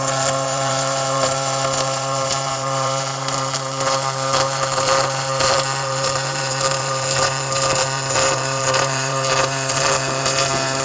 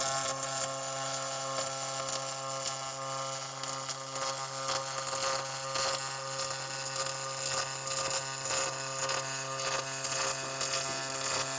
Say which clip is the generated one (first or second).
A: first